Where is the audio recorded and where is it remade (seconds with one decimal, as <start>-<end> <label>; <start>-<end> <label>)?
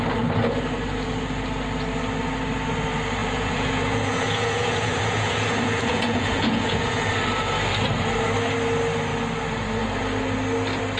0.0-3.2 recorded; 3.2-7.1 remade; 7.1-11.0 recorded